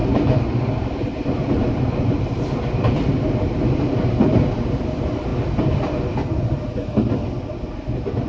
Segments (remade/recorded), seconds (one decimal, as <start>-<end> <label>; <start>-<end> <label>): 0.0-4.6 remade; 4.6-8.3 recorded